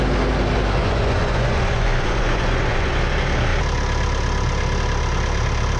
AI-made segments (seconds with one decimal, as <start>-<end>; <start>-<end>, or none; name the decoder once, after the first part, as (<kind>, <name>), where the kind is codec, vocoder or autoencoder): 0.8-2.9 (vocoder, Vocos)